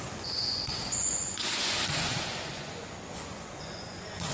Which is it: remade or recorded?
remade